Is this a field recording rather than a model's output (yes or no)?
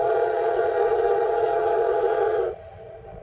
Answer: no